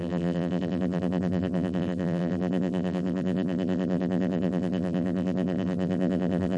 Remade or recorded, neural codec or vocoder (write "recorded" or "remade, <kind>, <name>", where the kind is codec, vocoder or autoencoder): remade, vocoder, BigVGAN v2